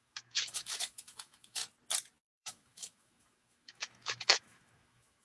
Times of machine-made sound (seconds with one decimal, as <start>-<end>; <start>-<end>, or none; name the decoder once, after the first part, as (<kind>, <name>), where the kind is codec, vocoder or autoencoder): 0.0-1.6 (autoencoder, DAC-VAE); 2.2-5.2